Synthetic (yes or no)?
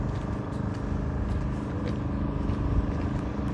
no